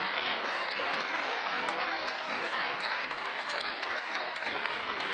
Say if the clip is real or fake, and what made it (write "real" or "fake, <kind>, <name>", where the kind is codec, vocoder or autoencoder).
fake, codec, DAC